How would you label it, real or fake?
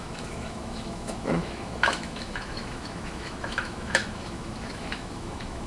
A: fake